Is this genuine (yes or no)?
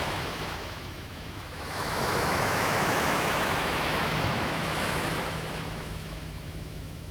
no